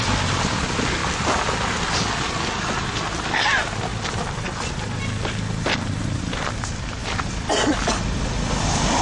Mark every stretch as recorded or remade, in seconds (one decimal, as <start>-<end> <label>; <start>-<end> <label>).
0.0-1.0 remade; 1.0-2.2 recorded; 2.2-9.0 remade